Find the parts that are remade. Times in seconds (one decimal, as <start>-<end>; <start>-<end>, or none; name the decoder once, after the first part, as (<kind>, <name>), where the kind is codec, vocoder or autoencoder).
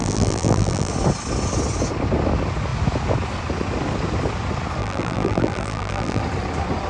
0.0-0.9 (vocoder, BigVGAN v2); 4.8-6.2